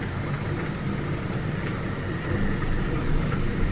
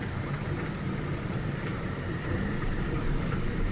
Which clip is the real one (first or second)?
first